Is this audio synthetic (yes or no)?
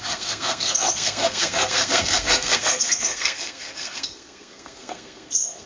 yes